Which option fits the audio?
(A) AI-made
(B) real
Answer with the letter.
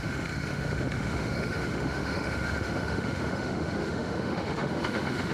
A